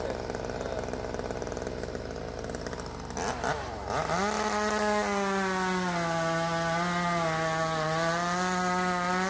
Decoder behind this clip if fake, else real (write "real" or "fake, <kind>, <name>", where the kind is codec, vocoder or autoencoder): real